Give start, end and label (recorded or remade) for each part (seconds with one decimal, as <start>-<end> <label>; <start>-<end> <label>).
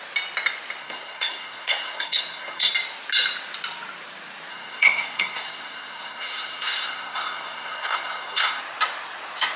0.0-0.8 recorded; 0.8-2.7 remade; 2.7-4.5 recorded; 4.5-8.6 remade; 8.6-9.6 recorded